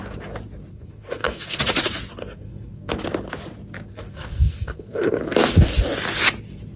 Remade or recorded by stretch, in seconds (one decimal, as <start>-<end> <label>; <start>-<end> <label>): 0.0-0.7 recorded; 0.7-1.6 remade; 1.6-2.2 recorded; 2.2-2.9 remade; 2.9-3.9 recorded; 3.9-5.2 remade; 5.2-6.8 recorded